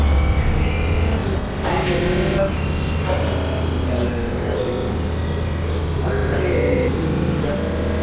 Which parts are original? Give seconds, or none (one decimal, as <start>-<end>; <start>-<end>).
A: 0.0-1.2; 2.0-8.0